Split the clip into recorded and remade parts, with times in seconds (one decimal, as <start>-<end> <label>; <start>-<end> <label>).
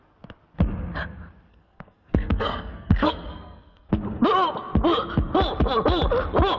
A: 0.0-1.5 recorded; 1.5-3.9 remade; 3.9-6.6 recorded